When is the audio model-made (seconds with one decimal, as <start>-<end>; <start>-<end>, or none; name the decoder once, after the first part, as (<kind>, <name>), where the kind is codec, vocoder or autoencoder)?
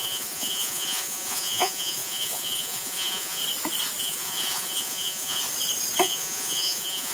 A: 0.0-3.4 (vocoder, Vocos); 4.0-5.4; 6.0-7.1